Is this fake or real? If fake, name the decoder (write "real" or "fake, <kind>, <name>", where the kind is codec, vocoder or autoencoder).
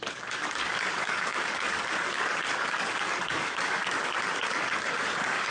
fake, codec, DAC